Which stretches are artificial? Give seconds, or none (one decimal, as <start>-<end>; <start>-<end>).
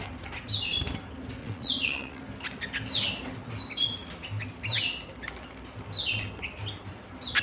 1.4-2.2